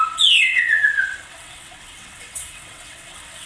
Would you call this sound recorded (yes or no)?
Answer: no